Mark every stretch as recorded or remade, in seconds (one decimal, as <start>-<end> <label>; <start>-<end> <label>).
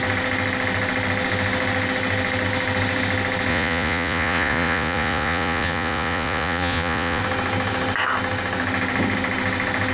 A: 0.0-3.5 recorded; 3.5-7.2 remade; 7.2-9.9 recorded